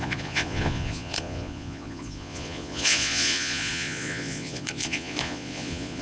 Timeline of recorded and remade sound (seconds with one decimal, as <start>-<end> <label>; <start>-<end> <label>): 0.0-6.0 remade